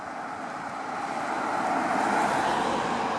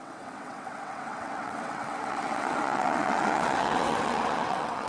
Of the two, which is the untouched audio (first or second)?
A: first